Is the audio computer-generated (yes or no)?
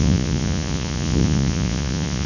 yes